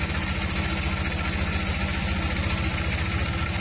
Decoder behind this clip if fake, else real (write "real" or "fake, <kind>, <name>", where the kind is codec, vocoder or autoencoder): real